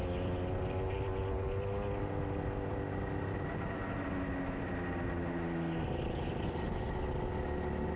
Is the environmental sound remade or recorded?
recorded